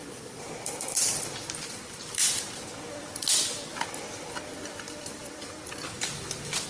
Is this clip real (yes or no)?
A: yes